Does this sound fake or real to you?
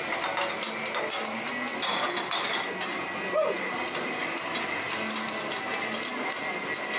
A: real